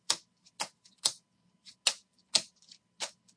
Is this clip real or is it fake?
real